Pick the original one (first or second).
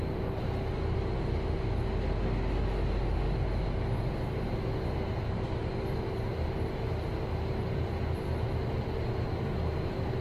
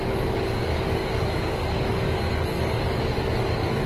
first